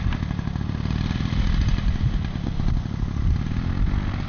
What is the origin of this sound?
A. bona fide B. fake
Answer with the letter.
A